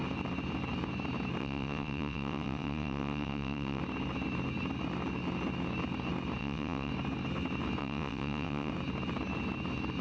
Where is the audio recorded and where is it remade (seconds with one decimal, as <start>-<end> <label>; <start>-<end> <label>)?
0.0-1.4 recorded; 1.4-3.8 remade; 3.8-6.4 recorded; 6.4-6.9 remade; 6.9-7.8 recorded; 7.8-8.7 remade; 8.7-10.0 recorded